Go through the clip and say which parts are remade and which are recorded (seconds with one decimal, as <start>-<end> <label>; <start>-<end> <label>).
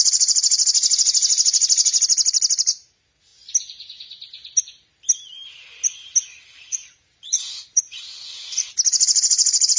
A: 0.0-6.3 recorded; 6.3-7.8 remade; 7.8-9.8 recorded